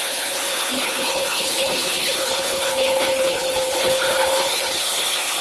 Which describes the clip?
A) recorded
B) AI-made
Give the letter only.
B